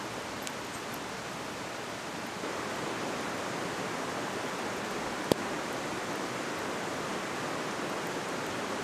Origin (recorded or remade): recorded